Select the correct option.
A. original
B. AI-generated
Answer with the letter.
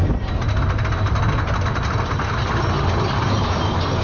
A